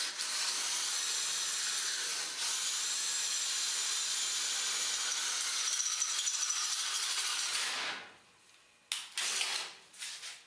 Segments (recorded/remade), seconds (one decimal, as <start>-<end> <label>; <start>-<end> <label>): 0.0-10.5 recorded